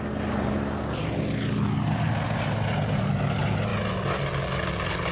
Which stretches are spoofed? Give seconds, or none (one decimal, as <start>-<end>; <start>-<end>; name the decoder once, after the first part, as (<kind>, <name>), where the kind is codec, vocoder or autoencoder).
none